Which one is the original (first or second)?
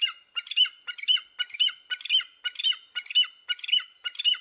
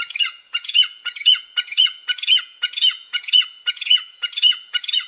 first